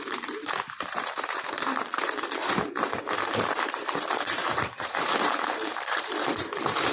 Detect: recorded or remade remade